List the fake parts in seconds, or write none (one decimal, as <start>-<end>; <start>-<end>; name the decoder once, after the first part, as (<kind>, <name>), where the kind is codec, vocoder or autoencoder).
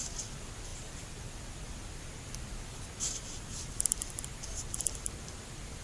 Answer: none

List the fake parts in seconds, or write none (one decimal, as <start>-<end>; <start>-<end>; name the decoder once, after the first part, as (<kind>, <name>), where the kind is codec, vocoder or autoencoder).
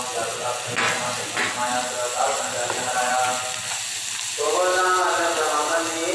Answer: none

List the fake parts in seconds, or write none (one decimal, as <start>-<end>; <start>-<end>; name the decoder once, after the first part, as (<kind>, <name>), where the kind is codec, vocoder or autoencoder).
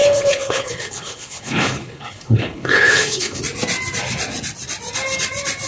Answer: 0.0-3.4 (codec, HILCodec)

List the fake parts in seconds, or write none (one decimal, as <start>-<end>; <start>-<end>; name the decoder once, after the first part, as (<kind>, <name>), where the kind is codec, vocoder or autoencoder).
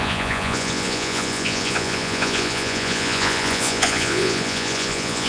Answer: 0.0-5.3 (vocoder, Vocos)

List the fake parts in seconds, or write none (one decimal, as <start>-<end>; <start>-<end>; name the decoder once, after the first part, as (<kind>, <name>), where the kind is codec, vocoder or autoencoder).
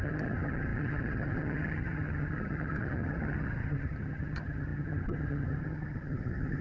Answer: 0.0-6.6 (vocoder, HiFi-GAN)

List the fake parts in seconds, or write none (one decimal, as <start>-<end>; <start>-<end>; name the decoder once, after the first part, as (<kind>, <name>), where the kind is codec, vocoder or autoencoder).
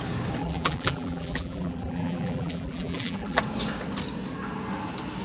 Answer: 0.4-3.4 (vocoder, BigVGAN v2)